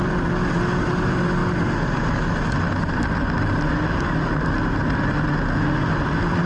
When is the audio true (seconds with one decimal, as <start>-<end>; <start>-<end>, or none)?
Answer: 0.0-6.5